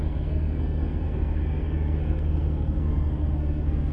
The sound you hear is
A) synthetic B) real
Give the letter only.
A